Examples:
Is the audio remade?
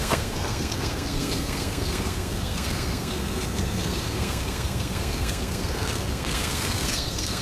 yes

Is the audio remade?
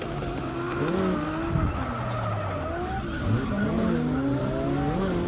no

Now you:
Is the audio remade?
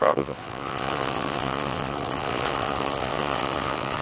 yes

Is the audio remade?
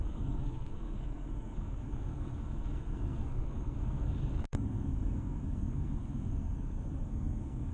yes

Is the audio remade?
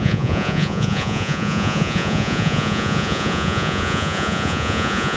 yes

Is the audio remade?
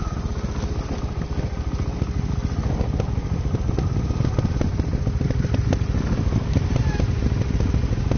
no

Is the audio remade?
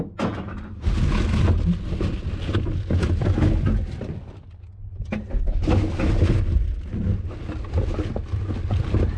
no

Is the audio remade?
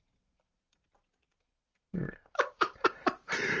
yes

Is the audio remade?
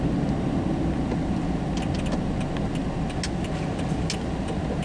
no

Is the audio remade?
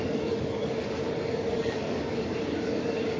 yes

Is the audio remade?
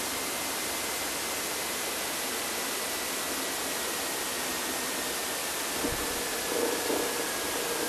no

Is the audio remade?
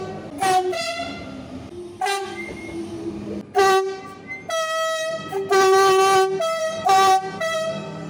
no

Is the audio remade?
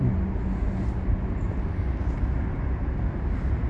no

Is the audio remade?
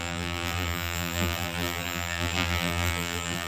yes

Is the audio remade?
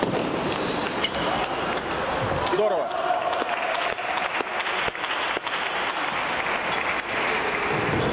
no